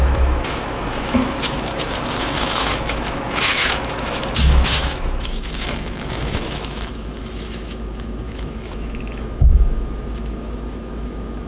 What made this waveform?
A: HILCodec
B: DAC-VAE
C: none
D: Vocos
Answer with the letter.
B